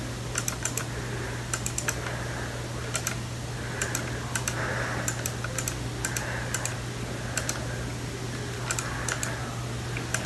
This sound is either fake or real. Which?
real